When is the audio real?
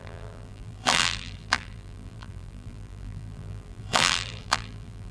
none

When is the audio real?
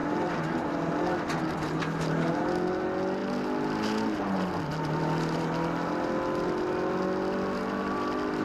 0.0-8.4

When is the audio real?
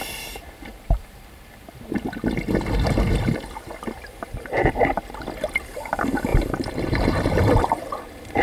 0.0-0.7; 1.7-6.3; 8.0-8.4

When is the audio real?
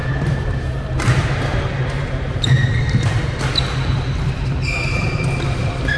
3.4-6.0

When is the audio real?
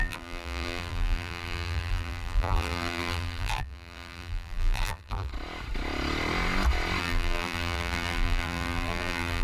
5.3-7.0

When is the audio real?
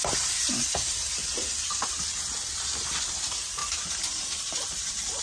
0.0-3.6